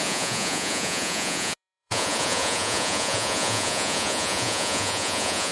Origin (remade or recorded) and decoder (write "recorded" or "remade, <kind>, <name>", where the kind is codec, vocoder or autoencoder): remade, vocoder, Vocos